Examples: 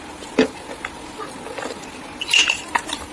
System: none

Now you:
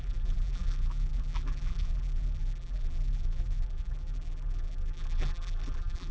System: vocoder, BigVGAN v2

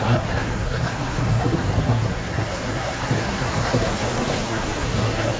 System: codec, SNAC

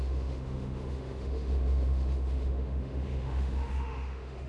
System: autoencoder, DAC-VAE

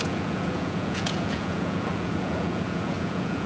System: vocoder, Vocos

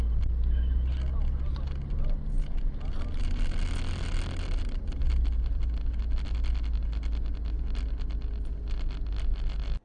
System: none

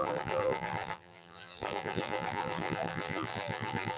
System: vocoder, BigVGAN v2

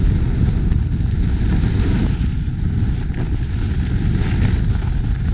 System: none